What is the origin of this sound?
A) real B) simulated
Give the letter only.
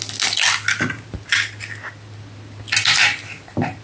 A